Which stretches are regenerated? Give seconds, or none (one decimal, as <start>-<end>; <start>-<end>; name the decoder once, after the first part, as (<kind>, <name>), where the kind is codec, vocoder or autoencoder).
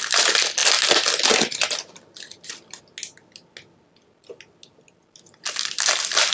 none